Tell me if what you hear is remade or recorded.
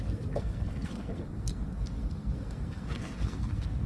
remade